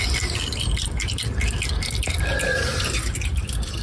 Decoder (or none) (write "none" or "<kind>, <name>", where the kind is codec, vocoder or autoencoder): vocoder, BigVGAN v2